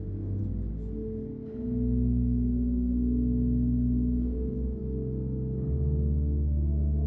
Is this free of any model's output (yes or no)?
yes